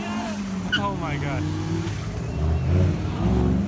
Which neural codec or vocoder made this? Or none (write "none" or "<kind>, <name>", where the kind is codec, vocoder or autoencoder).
none